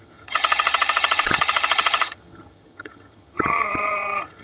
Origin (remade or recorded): remade